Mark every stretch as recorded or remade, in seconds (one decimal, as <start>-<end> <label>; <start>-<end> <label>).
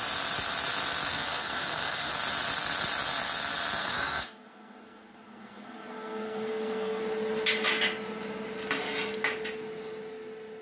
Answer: 0.0-1.1 recorded; 1.1-2.1 remade; 2.1-3.8 recorded; 3.8-7.0 remade; 7.0-10.6 recorded